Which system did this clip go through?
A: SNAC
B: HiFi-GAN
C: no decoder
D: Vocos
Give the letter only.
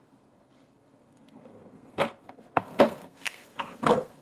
A